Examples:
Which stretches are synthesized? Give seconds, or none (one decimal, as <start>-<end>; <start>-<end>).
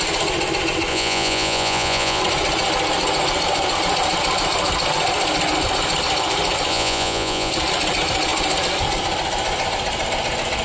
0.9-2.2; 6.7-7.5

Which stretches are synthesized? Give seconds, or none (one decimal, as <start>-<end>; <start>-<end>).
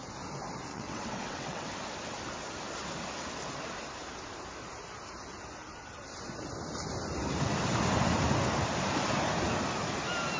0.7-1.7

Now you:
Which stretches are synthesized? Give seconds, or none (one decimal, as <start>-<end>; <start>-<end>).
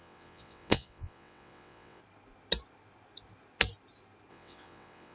0.0-2.0; 4.3-5.1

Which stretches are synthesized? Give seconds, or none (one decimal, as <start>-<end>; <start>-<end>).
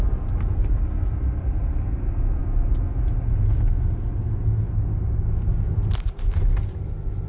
none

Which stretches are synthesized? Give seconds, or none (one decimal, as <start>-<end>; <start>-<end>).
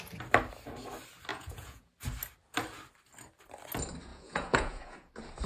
1.3-1.9; 4.1-5.1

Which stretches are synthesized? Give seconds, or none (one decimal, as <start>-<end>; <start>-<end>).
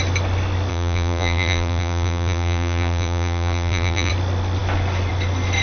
0.7-4.1